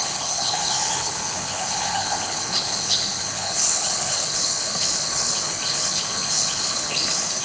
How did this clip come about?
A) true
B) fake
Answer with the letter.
B